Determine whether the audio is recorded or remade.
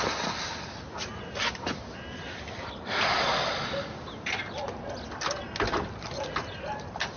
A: recorded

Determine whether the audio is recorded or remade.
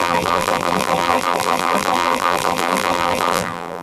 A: remade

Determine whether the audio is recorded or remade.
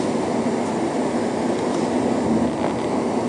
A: recorded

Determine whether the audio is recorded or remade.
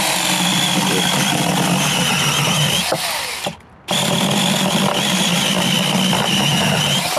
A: remade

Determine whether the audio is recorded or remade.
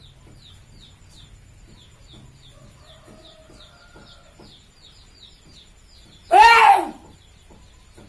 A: recorded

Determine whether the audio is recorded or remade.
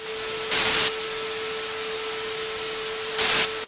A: recorded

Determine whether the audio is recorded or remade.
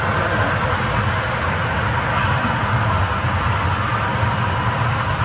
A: recorded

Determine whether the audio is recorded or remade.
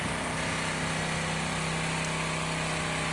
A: recorded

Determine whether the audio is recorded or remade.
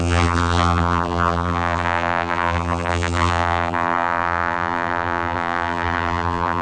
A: remade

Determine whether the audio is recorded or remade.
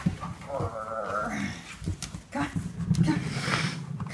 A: remade